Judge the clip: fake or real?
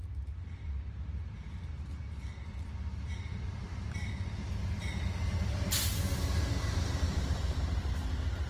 fake